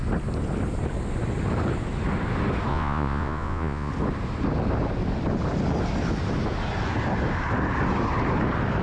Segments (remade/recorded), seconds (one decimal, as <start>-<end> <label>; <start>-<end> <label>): 0.0-2.7 recorded; 2.7-3.9 remade; 3.9-8.8 recorded